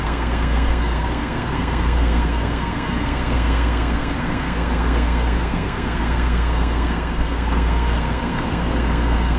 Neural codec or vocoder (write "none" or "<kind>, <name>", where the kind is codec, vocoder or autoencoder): codec, SNAC